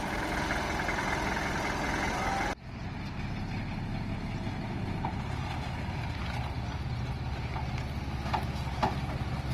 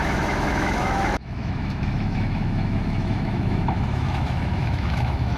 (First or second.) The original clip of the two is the first